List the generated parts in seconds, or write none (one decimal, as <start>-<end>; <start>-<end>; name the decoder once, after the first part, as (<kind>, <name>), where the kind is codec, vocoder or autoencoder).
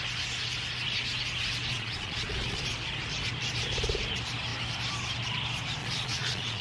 1.7-2.6 (vocoder, Vocos); 5.8-6.6